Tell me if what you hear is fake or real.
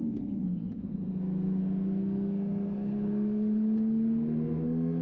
fake